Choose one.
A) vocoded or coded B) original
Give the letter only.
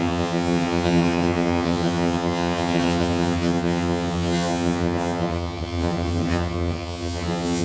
A